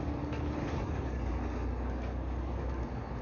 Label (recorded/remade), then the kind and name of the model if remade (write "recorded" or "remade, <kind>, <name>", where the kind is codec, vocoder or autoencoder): remade, codec, DAC